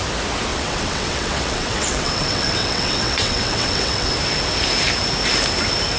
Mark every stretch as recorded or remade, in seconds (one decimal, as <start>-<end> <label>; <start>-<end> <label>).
0.0-0.5 recorded; 0.5-4.1 remade; 4.1-6.0 recorded